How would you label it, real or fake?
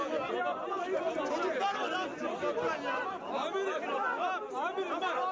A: real